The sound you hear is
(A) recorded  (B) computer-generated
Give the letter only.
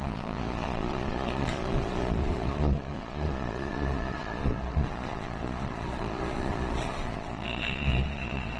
B